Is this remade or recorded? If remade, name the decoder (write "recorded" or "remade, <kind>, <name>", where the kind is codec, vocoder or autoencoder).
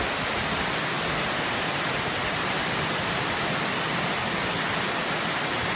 recorded